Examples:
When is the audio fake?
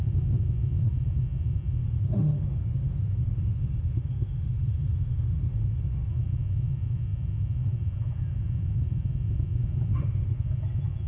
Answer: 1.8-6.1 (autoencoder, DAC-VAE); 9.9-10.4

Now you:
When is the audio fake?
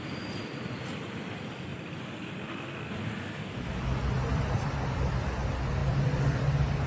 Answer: 0.0-1.7 (vocoder, BigVGAN v2); 4.3-6.9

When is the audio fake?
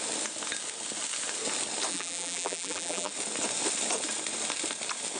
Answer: 1.9-3.1 (vocoder, BigVGAN v2)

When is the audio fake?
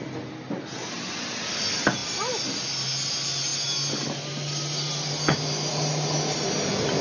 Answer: none